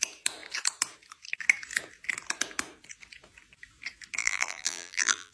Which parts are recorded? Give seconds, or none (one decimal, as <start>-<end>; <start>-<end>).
0.0-4.2

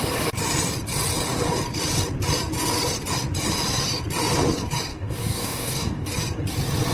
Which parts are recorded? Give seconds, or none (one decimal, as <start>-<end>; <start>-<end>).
0.0-4.9; 6.1-6.9

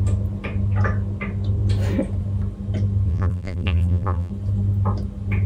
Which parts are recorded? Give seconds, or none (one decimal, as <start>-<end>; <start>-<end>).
0.0-3.1; 4.3-5.5

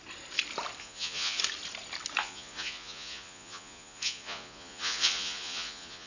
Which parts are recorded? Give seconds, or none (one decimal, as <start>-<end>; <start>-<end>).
0.0-0.8; 1.4-2.2